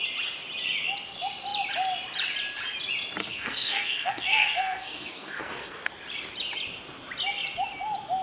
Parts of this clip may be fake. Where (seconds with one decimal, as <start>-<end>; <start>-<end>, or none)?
3.2-5.9